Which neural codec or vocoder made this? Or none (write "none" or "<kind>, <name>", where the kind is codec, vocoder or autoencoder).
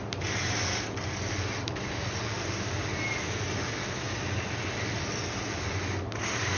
none